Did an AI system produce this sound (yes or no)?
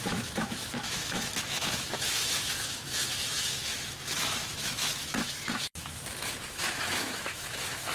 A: yes